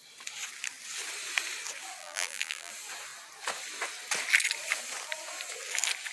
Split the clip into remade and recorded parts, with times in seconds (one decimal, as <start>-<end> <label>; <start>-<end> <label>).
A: 0.0-2.0 recorded; 2.0-2.7 remade; 2.7-6.1 recorded